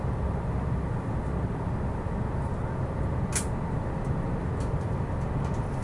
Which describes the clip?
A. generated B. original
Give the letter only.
B